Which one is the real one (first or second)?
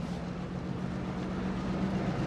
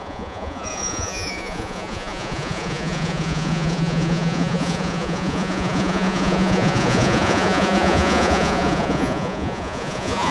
first